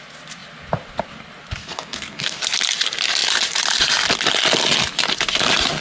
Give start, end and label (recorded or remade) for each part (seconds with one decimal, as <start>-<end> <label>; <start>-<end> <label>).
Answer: 0.0-1.6 recorded; 1.6-2.4 remade; 2.4-5.8 recorded